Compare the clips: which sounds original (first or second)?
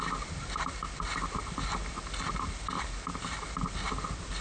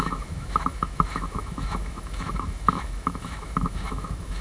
first